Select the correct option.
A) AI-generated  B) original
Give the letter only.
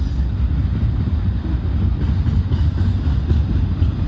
B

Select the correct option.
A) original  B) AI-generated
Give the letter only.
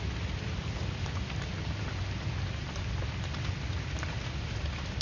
A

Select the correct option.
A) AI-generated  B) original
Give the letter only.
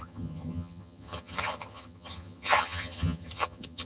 A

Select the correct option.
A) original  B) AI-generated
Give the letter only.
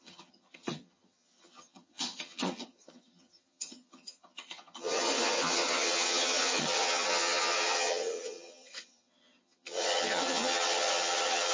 B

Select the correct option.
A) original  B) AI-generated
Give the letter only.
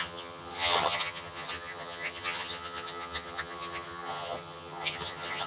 B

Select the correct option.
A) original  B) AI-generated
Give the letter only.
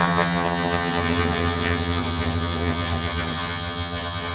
B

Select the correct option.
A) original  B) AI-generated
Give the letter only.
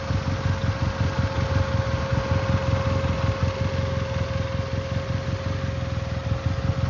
A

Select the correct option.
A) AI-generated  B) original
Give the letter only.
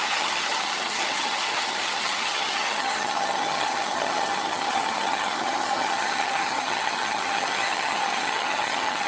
A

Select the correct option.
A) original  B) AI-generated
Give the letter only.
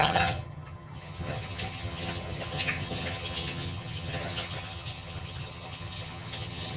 B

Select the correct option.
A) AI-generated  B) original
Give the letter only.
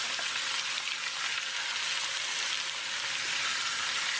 B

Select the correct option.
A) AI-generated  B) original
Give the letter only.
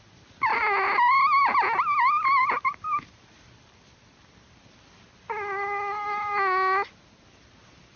B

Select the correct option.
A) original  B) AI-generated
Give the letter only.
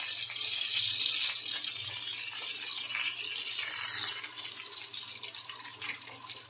A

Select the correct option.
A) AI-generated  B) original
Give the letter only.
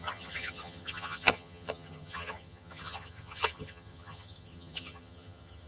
A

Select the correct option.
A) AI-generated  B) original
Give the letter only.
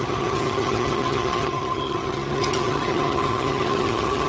A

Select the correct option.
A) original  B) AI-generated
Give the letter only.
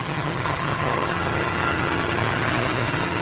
B